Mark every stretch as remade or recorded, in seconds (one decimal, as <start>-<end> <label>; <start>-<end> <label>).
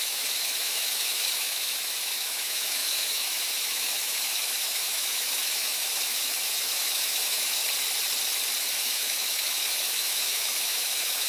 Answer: 0.0-7.6 remade; 7.6-8.8 recorded; 8.8-11.3 remade